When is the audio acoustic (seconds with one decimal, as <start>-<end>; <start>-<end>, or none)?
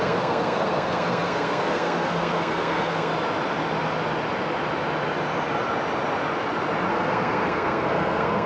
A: 3.1-6.9